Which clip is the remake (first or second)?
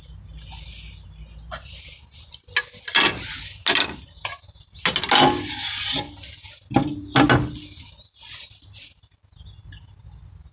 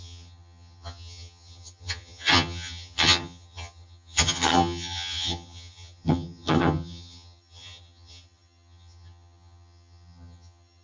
second